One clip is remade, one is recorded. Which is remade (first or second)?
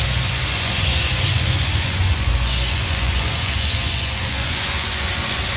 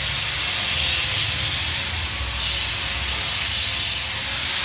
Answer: first